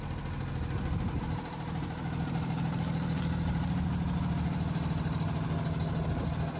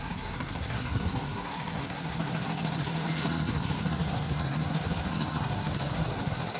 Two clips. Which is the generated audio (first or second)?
second